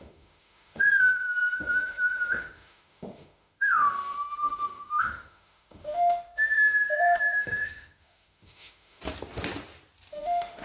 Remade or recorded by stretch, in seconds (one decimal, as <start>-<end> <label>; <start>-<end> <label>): 0.0-9.0 remade; 9.0-10.1 recorded; 10.1-10.6 remade

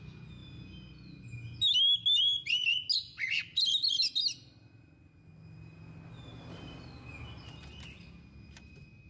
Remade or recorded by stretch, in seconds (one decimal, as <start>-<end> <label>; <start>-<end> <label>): 0.0-9.1 recorded

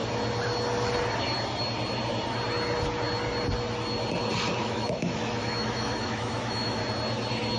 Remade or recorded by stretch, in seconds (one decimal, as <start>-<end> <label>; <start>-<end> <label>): 0.0-4.6 recorded; 4.6-6.8 remade; 6.8-7.6 recorded

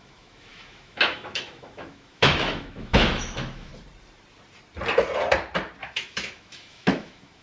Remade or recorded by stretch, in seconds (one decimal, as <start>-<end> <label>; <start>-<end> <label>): 0.0-3.7 remade; 3.7-5.8 recorded; 5.8-7.4 remade

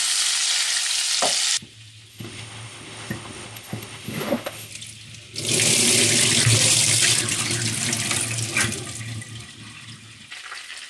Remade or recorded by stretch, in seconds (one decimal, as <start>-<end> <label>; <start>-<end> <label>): 0.0-2.1 recorded; 2.1-4.7 remade; 4.7-10.9 recorded